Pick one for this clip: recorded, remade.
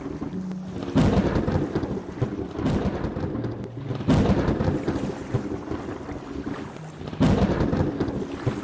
recorded